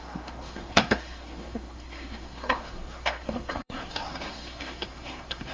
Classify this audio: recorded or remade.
remade